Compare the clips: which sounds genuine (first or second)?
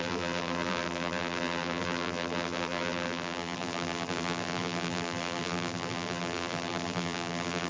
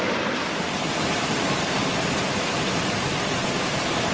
second